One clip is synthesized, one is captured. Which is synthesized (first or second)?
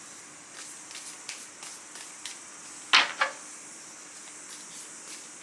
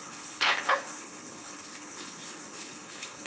second